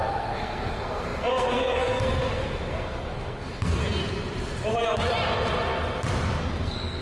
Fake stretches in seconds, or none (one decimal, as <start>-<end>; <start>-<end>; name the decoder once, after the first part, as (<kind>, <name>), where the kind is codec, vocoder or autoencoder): 0.0-3.8 (codec, SNAC); 6.4-7.0